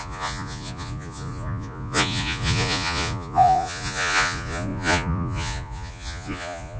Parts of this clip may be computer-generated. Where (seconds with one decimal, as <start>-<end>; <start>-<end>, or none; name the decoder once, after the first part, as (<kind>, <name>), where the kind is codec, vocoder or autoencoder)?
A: 0.0-6.8 (vocoder, Vocos)